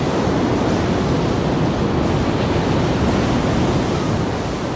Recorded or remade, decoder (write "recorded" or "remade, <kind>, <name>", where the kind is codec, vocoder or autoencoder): recorded